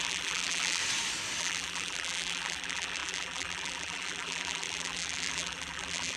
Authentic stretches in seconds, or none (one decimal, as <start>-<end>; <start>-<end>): 0.8-1.4